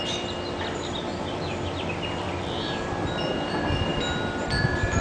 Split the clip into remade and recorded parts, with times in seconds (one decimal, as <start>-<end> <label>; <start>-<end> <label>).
0.0-1.1 recorded; 1.1-3.1 remade; 3.1-5.0 recorded

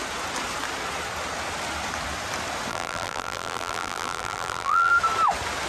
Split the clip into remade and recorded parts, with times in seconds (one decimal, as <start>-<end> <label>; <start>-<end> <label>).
0.0-2.7 recorded; 2.7-4.9 remade; 4.9-5.7 recorded

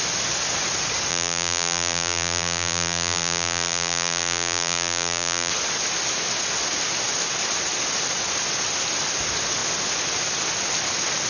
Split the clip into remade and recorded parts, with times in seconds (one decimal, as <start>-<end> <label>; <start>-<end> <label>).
0.0-1.1 recorded; 1.1-5.5 remade; 5.5-11.3 recorded

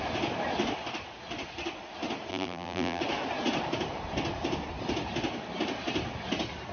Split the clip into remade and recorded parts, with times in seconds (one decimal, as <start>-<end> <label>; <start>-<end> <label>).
0.0-2.3 recorded; 2.3-3.0 remade; 3.0-6.7 recorded

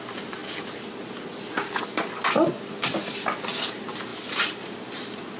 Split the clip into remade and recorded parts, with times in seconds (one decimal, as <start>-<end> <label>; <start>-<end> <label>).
0.0-0.4 remade; 0.4-2.3 recorded; 2.3-5.4 remade

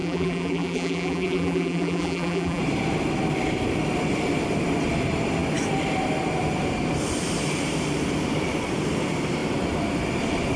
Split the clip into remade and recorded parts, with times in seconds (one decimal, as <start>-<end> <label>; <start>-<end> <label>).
0.0-2.6 remade; 2.6-10.6 recorded

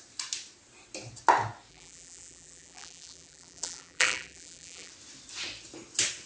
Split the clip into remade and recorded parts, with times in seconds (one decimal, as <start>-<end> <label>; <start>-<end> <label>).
0.0-1.7 recorded; 1.7-4.9 remade; 4.9-6.3 recorded

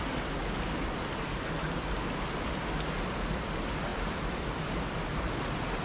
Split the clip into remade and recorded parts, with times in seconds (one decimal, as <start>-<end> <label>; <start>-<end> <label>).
0.0-3.9 recorded; 3.9-5.3 remade; 5.3-5.8 recorded